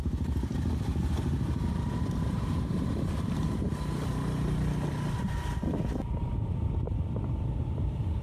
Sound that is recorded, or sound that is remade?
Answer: recorded